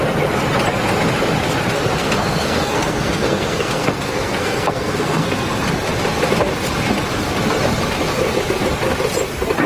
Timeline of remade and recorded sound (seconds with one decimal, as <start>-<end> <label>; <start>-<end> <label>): 0.0-2.0 recorded; 2.0-5.5 remade; 5.5-9.7 recorded